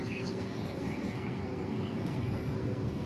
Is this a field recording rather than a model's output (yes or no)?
no